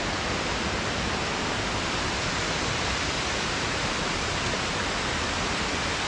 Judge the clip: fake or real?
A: real